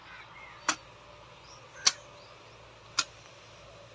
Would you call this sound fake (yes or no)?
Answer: no